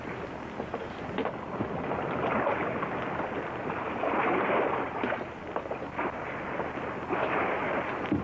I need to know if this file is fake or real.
real